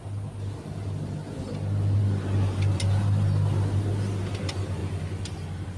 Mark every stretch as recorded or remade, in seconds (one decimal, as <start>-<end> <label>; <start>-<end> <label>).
0.0-5.8 recorded